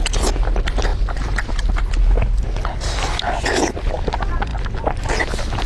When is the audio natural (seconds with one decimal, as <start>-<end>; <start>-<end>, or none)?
0.0-5.7